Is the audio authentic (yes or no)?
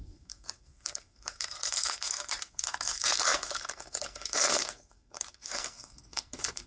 no